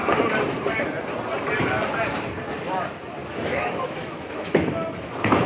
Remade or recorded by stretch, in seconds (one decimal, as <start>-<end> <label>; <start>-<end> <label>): 0.0-3.2 recorded; 3.2-5.5 remade